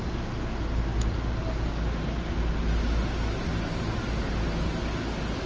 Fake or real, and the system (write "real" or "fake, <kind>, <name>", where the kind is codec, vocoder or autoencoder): real